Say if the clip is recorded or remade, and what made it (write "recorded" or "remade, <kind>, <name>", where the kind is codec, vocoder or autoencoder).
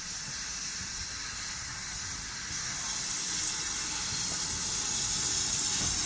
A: recorded